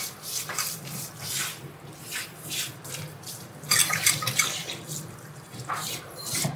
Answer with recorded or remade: remade